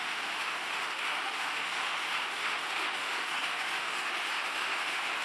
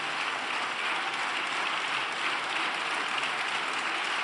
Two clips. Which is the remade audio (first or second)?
first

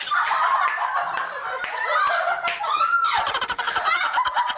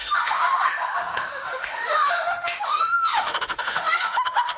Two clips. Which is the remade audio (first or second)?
second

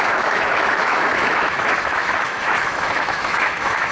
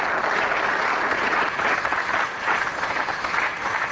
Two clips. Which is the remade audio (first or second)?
first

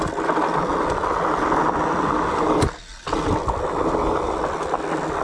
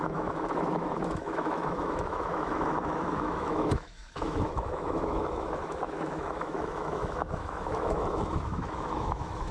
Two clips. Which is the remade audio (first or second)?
second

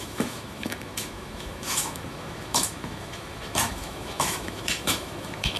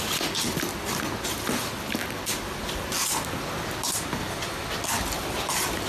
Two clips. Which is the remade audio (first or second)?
first